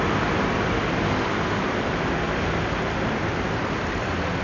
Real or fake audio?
fake